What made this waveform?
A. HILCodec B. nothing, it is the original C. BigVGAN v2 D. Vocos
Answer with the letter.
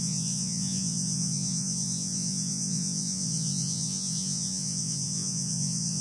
D